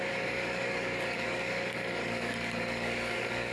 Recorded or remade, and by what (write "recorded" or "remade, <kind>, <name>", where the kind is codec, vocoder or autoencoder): remade, codec, DAC